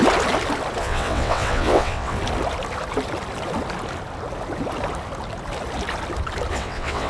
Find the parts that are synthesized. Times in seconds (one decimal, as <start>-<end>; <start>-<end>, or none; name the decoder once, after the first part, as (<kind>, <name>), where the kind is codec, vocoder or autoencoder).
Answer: 0.8-2.2 (vocoder, WaveNeXt); 6.5-7.1